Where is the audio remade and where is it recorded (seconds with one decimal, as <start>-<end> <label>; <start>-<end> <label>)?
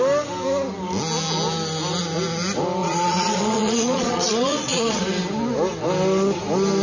0.0-2.8 recorded; 2.8-5.0 remade; 5.0-6.8 recorded